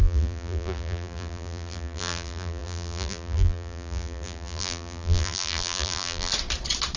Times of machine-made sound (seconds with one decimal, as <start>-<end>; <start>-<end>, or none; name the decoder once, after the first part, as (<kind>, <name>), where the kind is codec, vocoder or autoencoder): 0.0-6.3 (vocoder, BigVGAN v2)